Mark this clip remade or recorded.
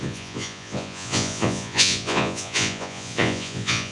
remade